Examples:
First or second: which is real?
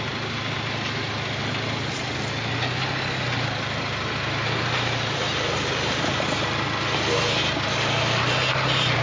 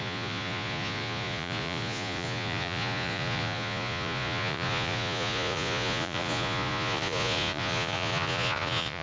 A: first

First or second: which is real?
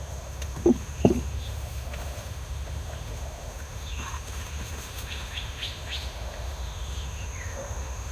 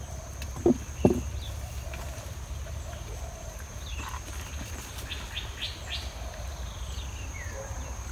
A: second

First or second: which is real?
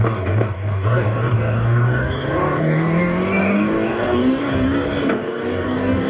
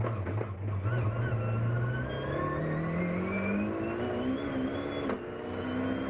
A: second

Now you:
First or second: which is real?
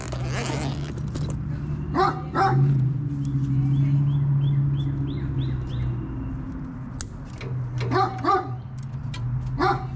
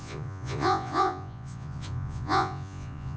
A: first